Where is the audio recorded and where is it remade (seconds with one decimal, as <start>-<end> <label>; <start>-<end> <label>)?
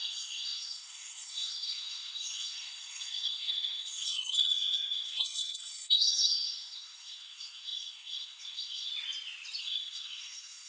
0.0-8.9 remade; 8.9-9.6 recorded; 9.6-10.7 remade